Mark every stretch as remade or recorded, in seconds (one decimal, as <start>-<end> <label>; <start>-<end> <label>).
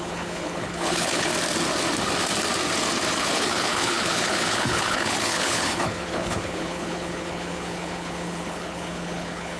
0.0-1.3 remade; 1.3-3.2 recorded; 3.2-9.6 remade